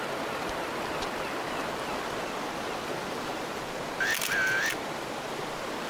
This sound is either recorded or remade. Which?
recorded